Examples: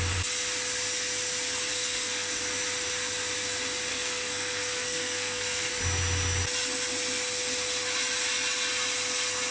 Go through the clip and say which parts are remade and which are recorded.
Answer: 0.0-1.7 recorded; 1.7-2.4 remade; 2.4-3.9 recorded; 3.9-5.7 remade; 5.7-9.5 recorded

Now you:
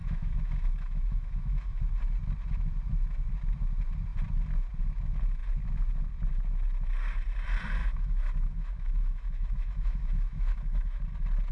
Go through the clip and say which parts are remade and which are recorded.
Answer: 0.0-1.8 remade; 1.8-7.8 recorded; 7.8-11.0 remade; 11.0-11.5 recorded